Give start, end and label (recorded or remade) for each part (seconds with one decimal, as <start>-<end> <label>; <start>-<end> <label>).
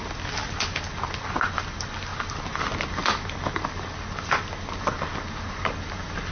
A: 0.0-0.4 recorded; 0.4-1.0 remade; 1.0-2.1 recorded; 2.1-6.3 remade